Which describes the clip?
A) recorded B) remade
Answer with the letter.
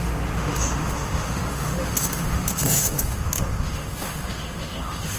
B